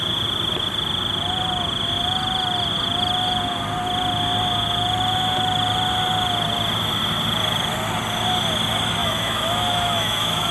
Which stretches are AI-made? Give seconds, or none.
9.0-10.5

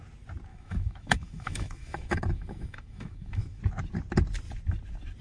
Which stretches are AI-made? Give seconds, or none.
0.5-3.6

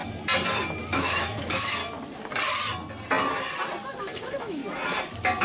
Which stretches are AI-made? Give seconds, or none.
0.9-1.8; 4.0-4.6

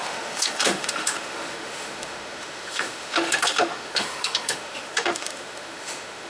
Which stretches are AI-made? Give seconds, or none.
0.0-6.3

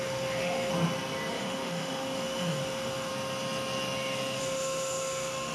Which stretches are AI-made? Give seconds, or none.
0.0-0.7; 1.3-3.1; 4.4-5.5

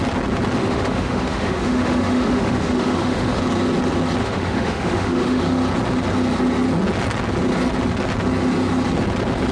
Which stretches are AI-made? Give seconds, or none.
0.6-3.4; 4.2-5.4

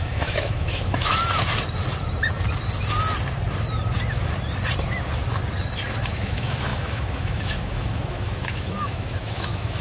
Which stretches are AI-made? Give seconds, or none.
0.0-1.1; 6.1-9.8

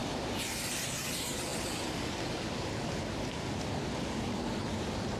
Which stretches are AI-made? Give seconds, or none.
none